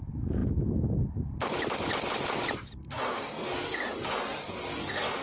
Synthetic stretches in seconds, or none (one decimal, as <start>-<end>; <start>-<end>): none